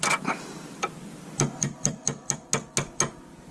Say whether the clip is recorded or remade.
recorded